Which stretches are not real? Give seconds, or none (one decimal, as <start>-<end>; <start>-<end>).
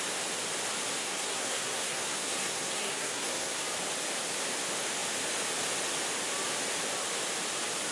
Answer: 1.0-3.6